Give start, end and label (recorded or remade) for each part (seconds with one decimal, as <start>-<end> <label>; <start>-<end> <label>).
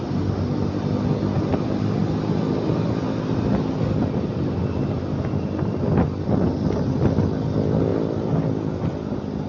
0.0-9.5 recorded